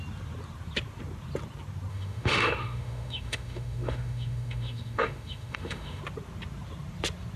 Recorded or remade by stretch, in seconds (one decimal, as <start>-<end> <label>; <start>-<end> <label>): 0.0-1.9 recorded; 1.9-6.0 remade; 6.0-7.4 recorded